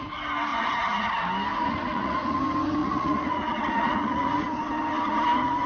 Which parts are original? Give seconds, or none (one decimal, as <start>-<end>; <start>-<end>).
0.0-0.5; 1.1-1.5; 2.4-2.8; 4.6-5.7